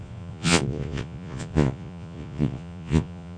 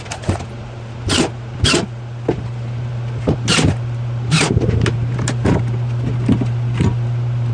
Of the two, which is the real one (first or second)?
second